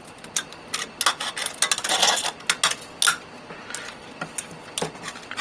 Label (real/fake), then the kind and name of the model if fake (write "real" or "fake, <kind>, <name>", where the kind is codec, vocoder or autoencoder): real